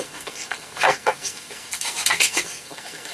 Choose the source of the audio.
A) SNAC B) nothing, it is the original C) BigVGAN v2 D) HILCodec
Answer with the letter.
A